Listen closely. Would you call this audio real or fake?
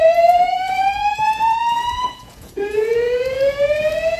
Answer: fake